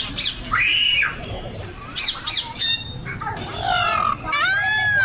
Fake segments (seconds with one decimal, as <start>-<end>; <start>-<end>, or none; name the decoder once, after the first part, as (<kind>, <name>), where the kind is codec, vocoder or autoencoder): 0.7-3.4 (vocoder, BigVGAN v2)